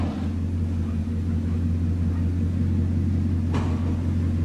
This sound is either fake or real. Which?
real